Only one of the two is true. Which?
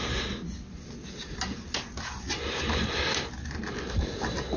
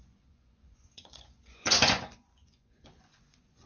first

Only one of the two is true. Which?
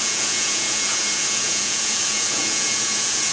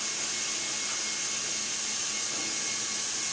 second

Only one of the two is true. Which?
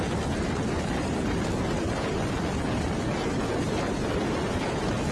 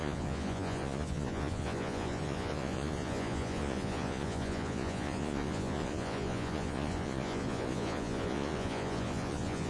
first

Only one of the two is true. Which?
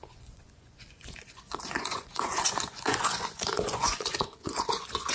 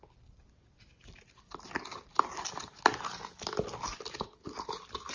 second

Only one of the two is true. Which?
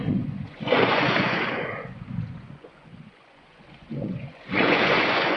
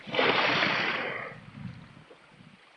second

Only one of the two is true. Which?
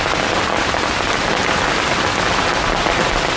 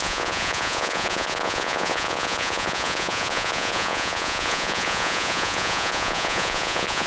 first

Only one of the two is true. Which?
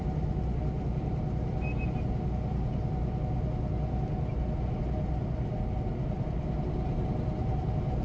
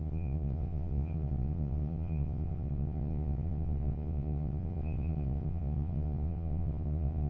first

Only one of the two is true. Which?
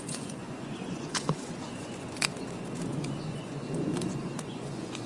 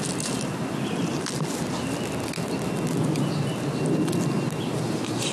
second